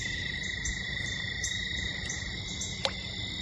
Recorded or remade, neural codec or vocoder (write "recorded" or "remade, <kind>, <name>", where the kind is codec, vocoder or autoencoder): recorded